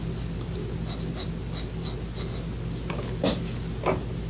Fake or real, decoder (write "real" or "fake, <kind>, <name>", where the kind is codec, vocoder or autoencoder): real